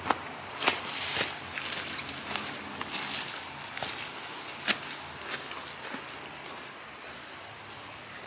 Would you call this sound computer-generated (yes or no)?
no